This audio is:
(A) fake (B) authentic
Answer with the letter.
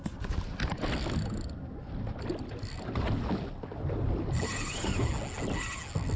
B